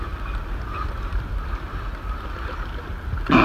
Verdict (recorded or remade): recorded